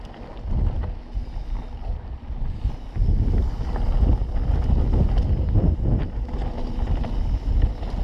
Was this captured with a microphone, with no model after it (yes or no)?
yes